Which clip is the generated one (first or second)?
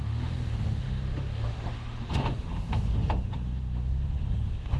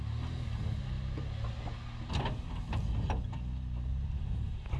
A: first